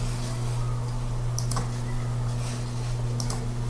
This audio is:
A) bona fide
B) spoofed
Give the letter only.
A